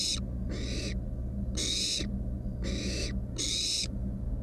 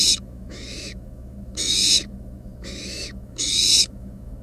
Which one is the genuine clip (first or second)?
first